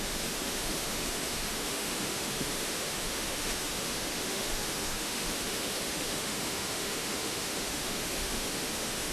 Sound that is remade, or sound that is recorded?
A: remade